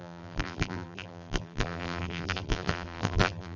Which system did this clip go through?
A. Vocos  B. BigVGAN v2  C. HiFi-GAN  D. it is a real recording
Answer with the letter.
B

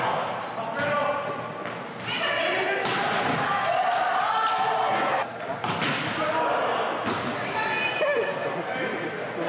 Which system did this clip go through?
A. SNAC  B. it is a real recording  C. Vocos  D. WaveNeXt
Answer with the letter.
B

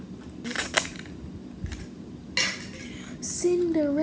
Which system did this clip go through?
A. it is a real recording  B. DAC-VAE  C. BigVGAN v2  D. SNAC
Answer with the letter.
A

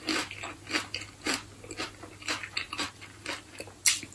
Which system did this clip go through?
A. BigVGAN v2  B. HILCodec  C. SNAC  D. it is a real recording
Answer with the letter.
D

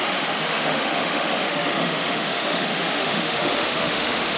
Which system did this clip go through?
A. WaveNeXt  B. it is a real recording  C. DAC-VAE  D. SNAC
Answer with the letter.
C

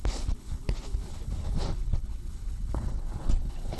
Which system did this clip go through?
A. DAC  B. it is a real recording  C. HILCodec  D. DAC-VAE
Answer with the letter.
C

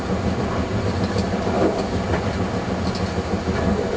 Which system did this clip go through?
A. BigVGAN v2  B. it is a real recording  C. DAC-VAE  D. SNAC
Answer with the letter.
B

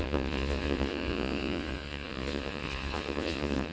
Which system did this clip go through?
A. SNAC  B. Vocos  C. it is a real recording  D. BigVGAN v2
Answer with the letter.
B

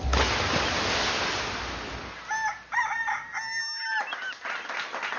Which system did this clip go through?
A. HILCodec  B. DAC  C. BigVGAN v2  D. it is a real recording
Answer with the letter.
D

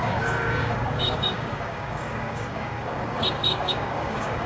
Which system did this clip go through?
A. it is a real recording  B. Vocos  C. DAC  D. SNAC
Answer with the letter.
C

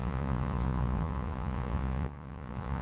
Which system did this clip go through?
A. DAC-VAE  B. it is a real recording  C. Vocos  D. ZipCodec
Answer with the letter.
C